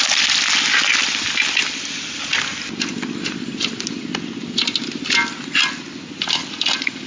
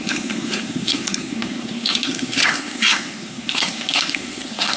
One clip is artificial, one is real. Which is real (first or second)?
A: first